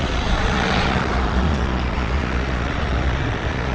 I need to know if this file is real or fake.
fake